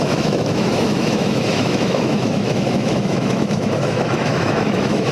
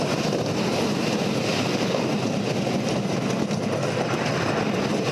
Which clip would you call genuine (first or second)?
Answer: second